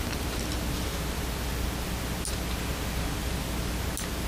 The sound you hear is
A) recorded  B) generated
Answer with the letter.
A